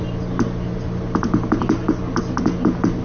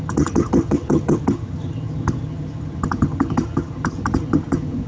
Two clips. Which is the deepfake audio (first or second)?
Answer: second